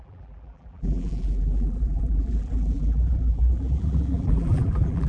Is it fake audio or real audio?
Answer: fake